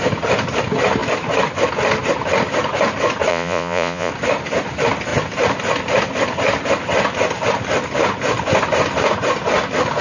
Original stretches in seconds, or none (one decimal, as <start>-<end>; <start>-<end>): 0.0-3.3; 4.1-10.0